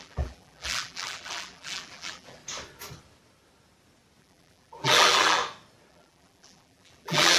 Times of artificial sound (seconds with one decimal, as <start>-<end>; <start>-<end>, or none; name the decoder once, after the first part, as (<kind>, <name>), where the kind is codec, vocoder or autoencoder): 0.0-2.4 (vocoder, BigVGAN v2); 4.2-5.4; 5.9-7.4